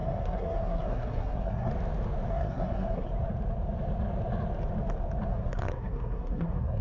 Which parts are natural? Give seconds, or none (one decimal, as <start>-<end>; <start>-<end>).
1.7-2.3; 3.1-5.3